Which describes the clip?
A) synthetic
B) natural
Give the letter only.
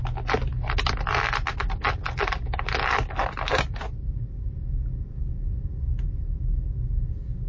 B